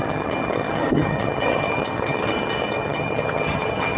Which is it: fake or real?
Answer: fake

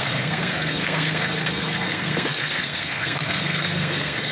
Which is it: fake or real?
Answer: fake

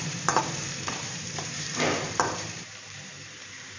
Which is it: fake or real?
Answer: fake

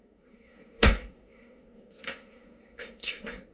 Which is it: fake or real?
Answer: fake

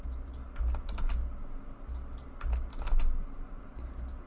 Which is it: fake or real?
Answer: real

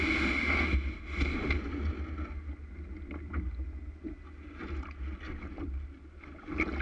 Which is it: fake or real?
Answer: real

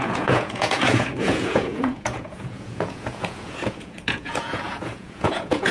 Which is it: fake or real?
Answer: fake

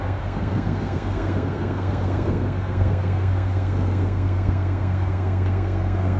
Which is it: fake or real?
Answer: fake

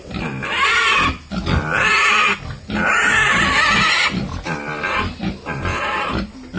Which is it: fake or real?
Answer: real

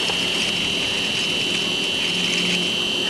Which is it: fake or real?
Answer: real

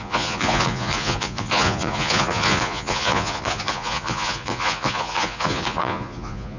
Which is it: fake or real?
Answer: fake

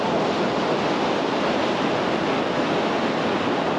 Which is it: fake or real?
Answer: real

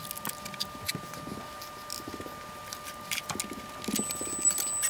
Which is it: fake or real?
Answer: real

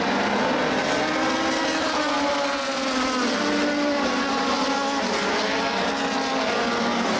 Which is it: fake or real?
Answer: real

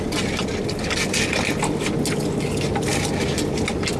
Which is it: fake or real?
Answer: real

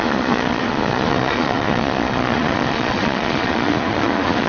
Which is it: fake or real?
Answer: fake